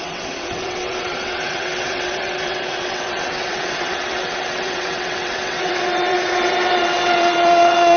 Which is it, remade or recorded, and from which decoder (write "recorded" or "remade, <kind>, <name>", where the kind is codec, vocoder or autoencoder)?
remade, vocoder, WaveNeXt